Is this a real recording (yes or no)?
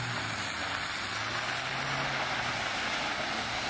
yes